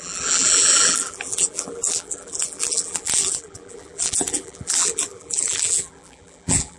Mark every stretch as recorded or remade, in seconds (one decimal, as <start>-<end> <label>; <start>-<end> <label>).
0.0-6.8 remade